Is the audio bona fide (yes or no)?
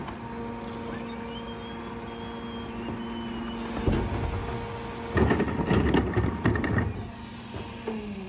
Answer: yes